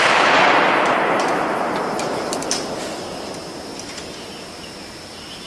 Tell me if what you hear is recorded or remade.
recorded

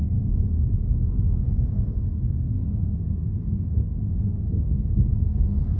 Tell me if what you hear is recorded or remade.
remade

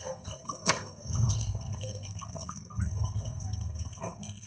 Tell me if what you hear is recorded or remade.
remade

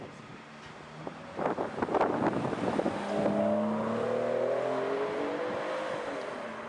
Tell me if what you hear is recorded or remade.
recorded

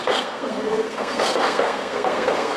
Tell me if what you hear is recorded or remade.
remade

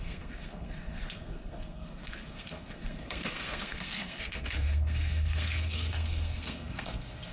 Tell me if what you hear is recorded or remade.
remade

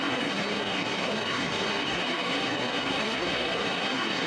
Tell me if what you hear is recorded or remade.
remade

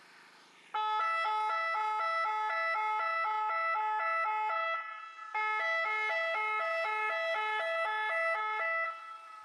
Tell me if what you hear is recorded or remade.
recorded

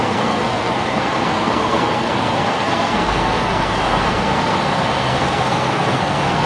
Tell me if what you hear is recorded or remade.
remade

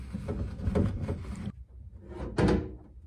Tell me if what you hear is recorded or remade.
recorded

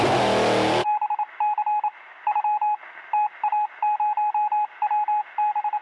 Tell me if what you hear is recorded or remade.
recorded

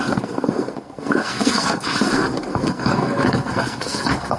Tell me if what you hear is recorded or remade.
remade